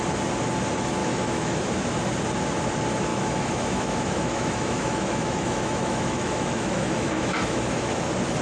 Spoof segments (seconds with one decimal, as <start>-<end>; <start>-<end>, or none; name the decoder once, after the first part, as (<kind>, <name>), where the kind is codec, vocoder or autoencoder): 1.0-1.7 (autoencoder, DAC-VAE); 3.1-8.0